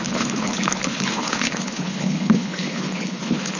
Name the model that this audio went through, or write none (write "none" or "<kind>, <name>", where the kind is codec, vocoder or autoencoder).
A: codec, HILCodec